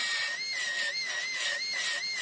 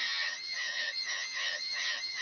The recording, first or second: first